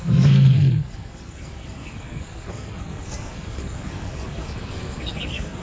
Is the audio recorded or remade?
remade